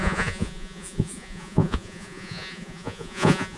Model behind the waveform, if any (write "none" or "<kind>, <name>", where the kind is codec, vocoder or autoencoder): vocoder, Vocos